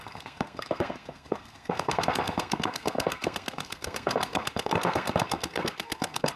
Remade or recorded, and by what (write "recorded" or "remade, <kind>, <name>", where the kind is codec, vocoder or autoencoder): remade, codec, SNAC